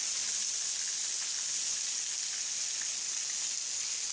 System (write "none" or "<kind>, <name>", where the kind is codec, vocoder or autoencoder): none